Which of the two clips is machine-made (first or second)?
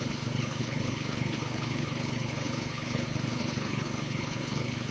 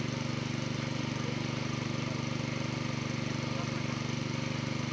first